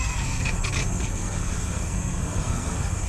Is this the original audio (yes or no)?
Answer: no